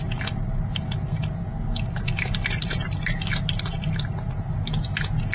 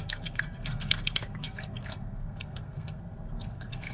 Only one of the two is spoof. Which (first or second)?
second